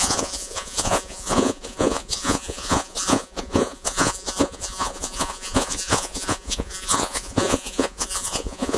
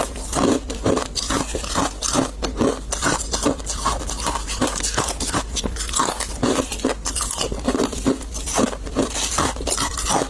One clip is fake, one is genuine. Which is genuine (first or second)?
second